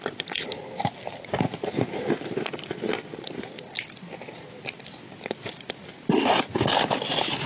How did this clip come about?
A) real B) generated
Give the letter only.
A